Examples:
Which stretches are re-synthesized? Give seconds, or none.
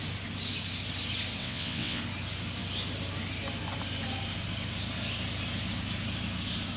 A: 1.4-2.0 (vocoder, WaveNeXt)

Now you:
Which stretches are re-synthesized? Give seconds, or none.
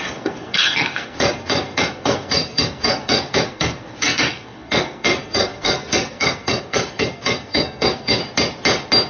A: 0.0-8.2 (codec, SNAC)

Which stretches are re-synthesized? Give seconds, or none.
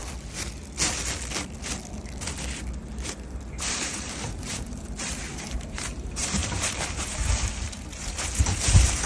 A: 3.7-9.1 (vocoder, BigVGAN v2)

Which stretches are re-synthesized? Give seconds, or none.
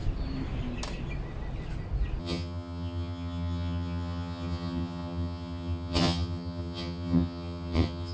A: 2.2-8.1 (vocoder, HiFi-GAN)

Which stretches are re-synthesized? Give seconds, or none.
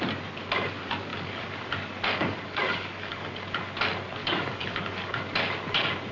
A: 1.1-1.7 (codec, DAC); 2.1-3.3; 4.2-5.2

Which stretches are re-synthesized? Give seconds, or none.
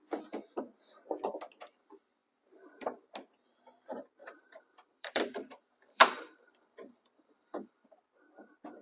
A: 2.2-3.0 (vocoder, BigVGAN v2); 4.2-7.9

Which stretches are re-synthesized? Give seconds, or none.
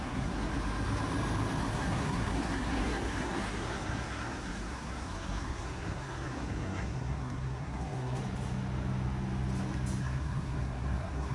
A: 0.0-0.5 (codec, SNAC); 1.6-8.2; 10.0-11.3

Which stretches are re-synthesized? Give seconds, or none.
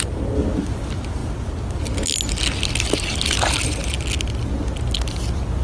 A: none